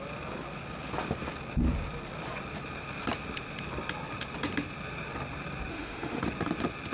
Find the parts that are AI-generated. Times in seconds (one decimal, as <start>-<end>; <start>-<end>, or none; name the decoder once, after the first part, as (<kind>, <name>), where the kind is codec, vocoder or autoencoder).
5.7-6.2 (autoencoder, DAC-VAE)